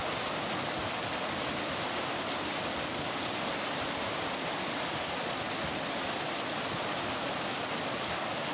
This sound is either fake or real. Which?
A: real